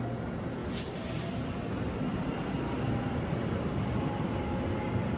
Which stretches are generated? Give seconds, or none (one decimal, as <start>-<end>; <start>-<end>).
none